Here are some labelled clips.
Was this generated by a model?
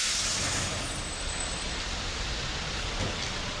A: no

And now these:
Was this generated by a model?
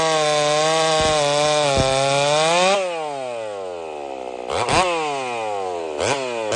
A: no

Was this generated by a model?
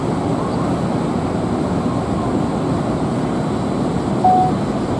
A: no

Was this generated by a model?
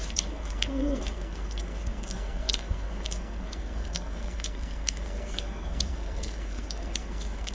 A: yes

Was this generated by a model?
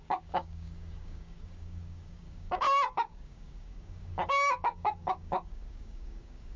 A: yes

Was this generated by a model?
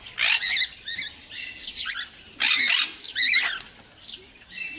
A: no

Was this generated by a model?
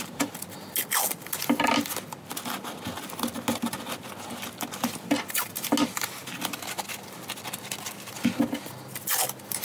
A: no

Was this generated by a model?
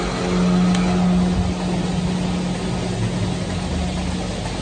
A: no